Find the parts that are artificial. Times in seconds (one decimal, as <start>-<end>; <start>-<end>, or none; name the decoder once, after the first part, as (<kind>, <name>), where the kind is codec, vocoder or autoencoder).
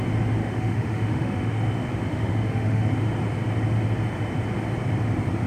0.4-1.6 (autoencoder, DAC-VAE); 2.1-2.9